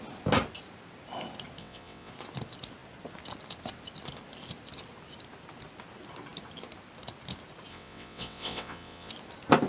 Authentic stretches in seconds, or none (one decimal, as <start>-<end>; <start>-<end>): 0.0-1.6; 2.1-7.7; 9.1-9.7